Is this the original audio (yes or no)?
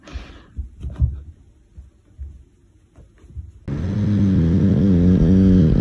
yes